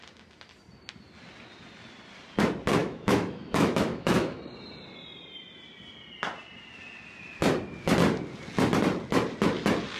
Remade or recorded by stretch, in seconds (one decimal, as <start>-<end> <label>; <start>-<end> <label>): 0.0-2.8 recorded; 2.8-4.4 remade; 4.4-10.0 recorded

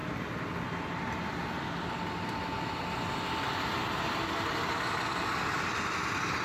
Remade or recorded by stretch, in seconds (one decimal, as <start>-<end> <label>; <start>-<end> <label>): 0.0-6.4 recorded

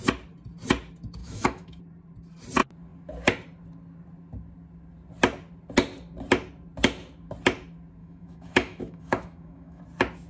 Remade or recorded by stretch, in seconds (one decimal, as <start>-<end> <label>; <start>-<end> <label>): 0.0-1.2 recorded; 1.2-1.8 remade; 1.8-8.0 recorded; 8.0-9.8 remade; 9.8-10.3 recorded

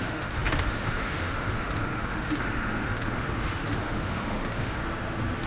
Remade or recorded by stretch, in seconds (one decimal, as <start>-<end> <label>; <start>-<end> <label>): 0.0-4.8 remade; 4.8-5.5 recorded

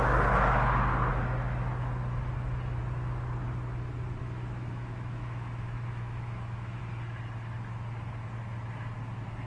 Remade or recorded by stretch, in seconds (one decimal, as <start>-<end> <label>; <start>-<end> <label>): 0.0-4.2 recorded; 4.2-6.8 remade; 6.8-9.5 recorded

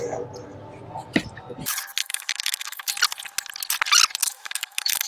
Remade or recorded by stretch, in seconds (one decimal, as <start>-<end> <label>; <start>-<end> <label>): 0.0-2.0 recorded; 2.0-2.9 remade; 2.9-4.2 recorded; 4.2-5.1 remade

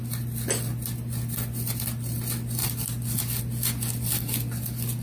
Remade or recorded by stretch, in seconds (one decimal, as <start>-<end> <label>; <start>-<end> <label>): 0.0-5.0 recorded